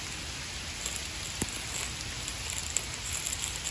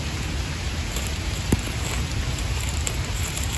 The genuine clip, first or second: first